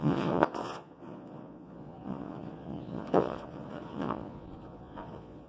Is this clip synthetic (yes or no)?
yes